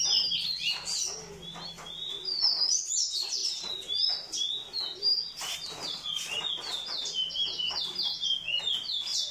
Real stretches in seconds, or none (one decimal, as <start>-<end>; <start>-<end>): 0.0-9.3